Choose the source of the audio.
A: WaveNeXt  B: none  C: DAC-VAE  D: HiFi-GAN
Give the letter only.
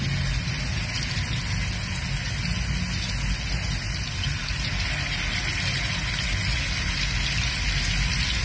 B